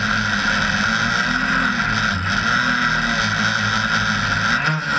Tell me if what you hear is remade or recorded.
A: recorded